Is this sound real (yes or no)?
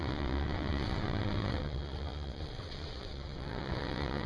no